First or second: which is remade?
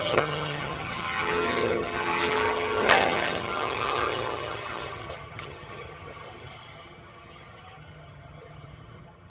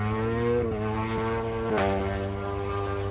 first